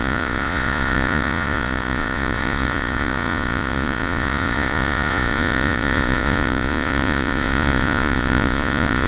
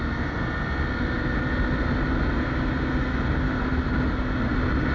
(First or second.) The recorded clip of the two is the second